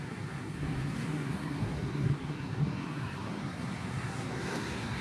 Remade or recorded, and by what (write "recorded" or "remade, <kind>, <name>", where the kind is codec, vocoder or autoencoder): remade, codec, SNAC